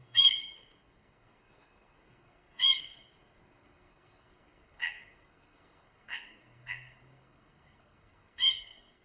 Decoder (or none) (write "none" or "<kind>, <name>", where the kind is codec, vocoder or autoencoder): codec, SNAC